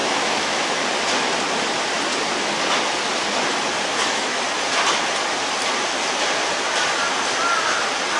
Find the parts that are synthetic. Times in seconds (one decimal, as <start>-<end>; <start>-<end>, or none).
0.0-0.8; 3.9-4.4